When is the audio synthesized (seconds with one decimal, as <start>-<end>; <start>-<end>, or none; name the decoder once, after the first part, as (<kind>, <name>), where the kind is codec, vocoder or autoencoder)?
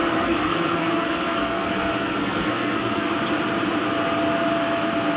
0.0-3.1 (codec, SNAC)